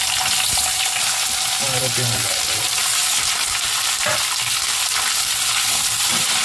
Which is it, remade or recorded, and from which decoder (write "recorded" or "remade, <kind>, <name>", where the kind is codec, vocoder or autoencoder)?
recorded